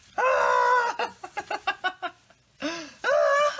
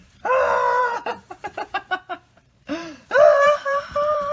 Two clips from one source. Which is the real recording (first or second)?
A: first